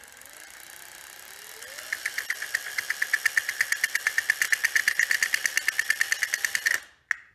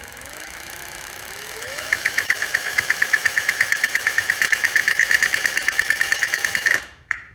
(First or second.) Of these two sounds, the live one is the first